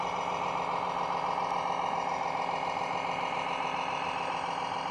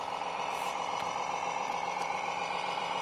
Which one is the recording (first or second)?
first